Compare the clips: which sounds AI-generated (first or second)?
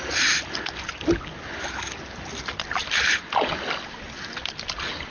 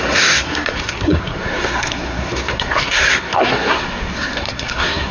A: second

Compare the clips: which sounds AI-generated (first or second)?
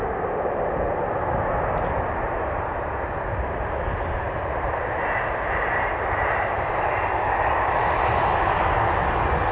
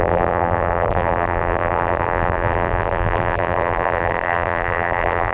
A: second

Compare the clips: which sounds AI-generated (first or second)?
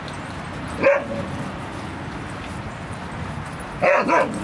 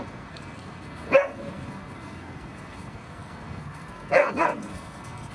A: second